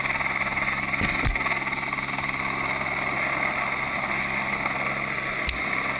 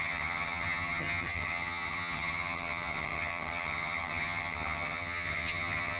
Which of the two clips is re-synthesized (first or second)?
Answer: second